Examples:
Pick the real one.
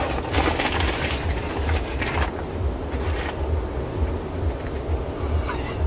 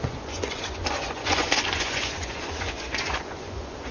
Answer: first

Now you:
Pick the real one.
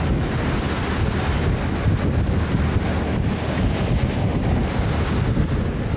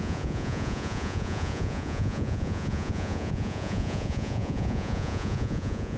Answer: first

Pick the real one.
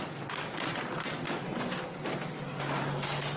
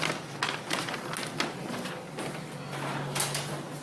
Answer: second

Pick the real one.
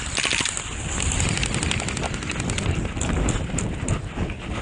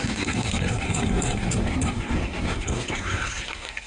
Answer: first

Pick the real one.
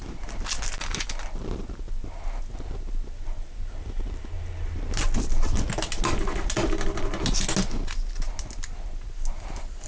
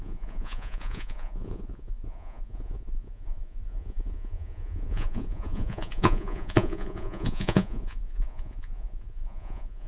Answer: first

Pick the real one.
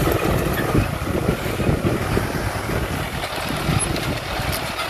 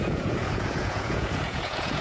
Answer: first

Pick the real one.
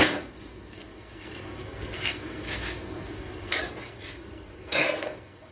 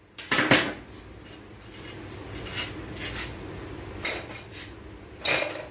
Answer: second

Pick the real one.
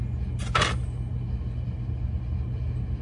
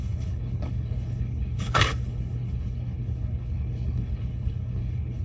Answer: first